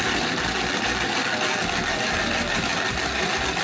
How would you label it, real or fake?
real